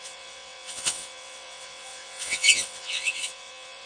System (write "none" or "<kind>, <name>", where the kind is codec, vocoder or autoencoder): vocoder, WaveNeXt